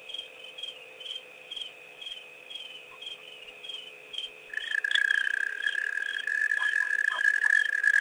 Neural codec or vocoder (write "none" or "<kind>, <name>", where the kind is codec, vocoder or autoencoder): vocoder, BigVGAN v2